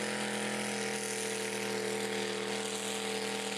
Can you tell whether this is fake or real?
real